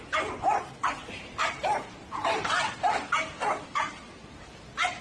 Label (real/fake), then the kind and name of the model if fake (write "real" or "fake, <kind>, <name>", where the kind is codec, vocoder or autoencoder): real